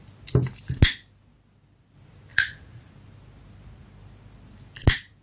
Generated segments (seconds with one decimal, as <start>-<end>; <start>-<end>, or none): 2.3-2.9